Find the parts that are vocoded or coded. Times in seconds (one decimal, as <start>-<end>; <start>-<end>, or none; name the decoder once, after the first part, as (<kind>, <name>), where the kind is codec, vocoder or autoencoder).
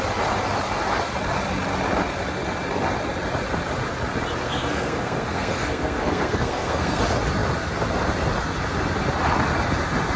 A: 4.4-7.0 (codec, SNAC)